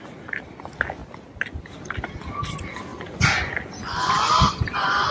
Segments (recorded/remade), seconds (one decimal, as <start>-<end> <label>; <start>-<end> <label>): 0.0-2.9 recorded; 2.9-3.5 remade; 3.5-3.9 recorded; 3.9-5.1 remade